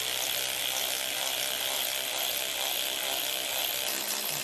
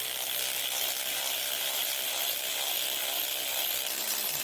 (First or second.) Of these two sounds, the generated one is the second